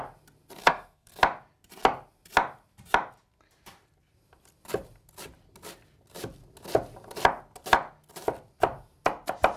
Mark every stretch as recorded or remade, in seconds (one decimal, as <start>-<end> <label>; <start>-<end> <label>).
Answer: 0.0-0.6 recorded; 0.6-1.2 remade; 1.2-9.6 recorded